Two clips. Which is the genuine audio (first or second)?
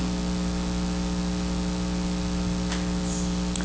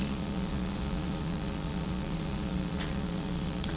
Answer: first